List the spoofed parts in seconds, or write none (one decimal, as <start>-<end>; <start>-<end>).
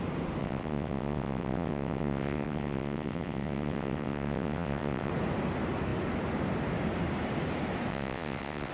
0.4-5.1; 7.9-8.7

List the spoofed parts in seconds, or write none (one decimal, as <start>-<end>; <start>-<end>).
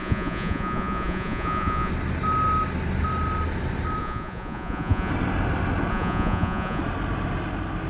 0.0-1.9; 4.0-5.1; 5.9-6.8